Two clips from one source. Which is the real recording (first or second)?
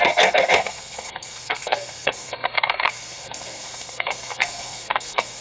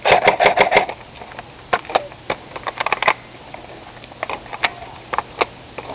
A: second